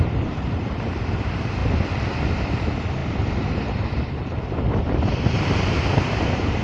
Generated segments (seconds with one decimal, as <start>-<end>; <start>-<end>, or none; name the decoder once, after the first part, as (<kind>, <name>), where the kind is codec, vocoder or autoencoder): 0.0-1.6 (vocoder, BigVGAN v2); 2.2-6.6